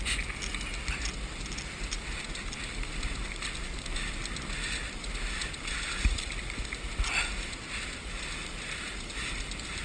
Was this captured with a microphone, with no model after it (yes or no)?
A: yes